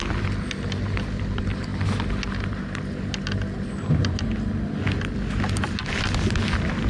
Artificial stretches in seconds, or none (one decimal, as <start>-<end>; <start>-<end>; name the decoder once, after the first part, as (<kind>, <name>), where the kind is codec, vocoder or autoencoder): none